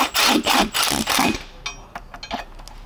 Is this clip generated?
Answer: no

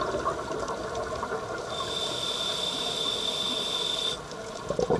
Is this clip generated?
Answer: no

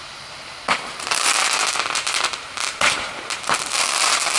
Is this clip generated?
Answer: yes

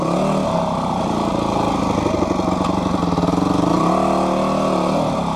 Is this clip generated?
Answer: no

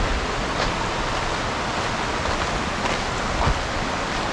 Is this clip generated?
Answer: no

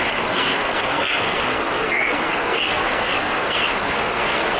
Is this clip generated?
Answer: yes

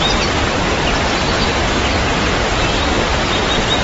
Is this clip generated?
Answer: no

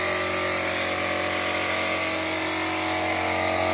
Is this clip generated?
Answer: no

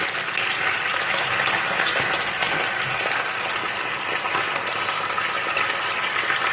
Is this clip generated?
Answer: no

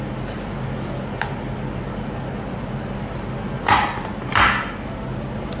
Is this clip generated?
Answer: no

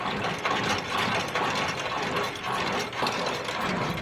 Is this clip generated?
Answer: no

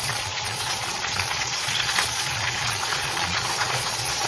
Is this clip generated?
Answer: yes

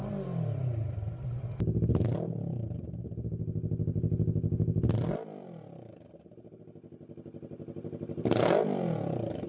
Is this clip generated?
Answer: no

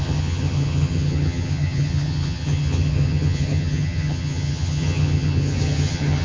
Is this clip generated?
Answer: yes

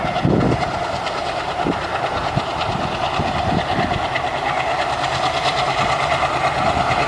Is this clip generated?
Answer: no